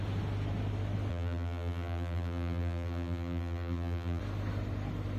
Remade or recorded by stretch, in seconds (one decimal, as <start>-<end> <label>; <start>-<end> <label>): 0.0-1.1 recorded; 1.1-4.2 remade; 4.2-5.2 recorded